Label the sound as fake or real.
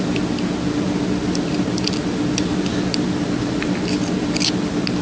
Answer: real